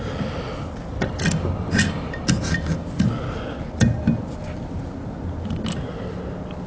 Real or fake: real